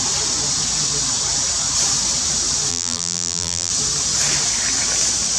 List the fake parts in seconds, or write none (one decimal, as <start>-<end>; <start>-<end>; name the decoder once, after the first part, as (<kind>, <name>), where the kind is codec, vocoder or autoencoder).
2.7-3.7 (vocoder, BigVGAN v2)